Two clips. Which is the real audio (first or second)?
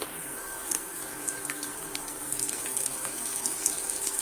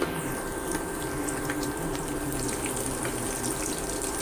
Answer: second